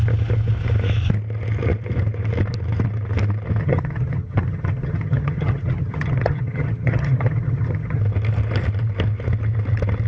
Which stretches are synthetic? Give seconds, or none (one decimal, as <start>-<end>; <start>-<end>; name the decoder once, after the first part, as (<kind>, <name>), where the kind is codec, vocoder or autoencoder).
3.6-8.0 (vocoder, HiFi-GAN)